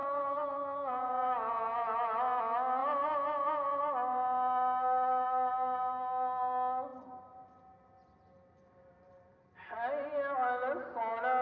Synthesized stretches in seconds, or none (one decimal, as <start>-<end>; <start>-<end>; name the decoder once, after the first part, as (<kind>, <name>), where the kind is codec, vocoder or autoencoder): 0.0-2.4 (vocoder, Vocos); 2.8-3.8